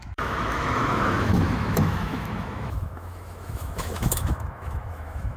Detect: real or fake fake